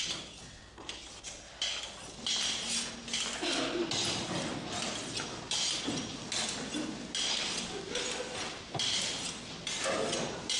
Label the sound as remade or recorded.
recorded